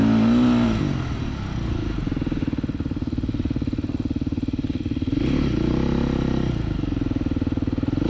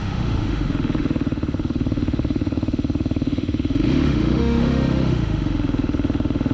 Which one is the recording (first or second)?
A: first